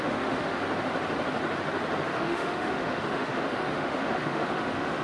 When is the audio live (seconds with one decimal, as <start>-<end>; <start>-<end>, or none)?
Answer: 0.6-2.1